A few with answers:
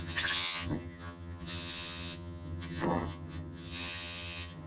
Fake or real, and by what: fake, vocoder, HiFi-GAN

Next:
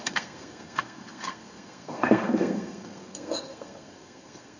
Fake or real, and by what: fake, codec, SNAC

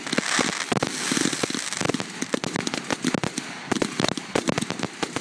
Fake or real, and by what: real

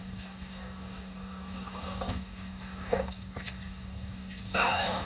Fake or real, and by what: fake, codec, DAC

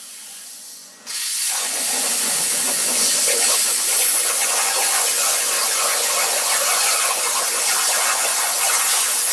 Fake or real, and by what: fake, vocoder, Vocos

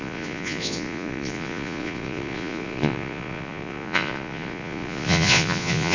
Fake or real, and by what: fake, vocoder, Vocos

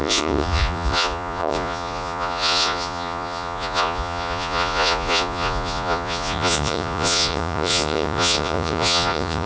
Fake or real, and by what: fake, vocoder, Vocos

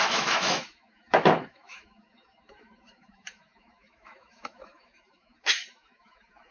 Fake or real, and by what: fake, autoencoder, DAC-VAE